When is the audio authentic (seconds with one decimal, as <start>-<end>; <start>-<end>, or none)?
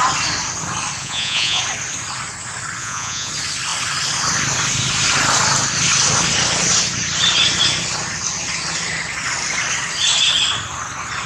0.0-1.0; 1.6-2.8; 3.3-11.3